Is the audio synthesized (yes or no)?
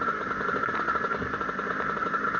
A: no